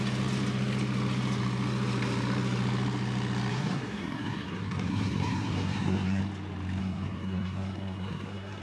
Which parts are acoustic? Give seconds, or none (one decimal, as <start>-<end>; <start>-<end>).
0.0-3.5; 6.2-6.8